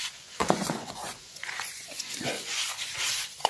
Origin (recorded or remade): remade